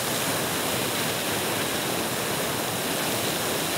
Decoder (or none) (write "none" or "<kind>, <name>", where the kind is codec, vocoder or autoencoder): none